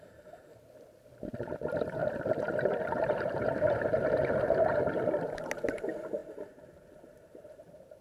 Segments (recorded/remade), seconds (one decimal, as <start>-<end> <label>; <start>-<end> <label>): 0.0-0.5 remade; 0.5-1.4 recorded; 1.4-2.0 remade; 2.0-2.8 recorded; 2.8-8.0 remade